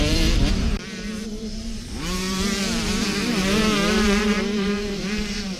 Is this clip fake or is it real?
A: fake